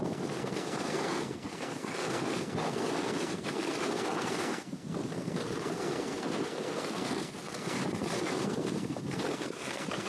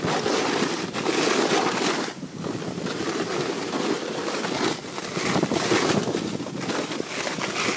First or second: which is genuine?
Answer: second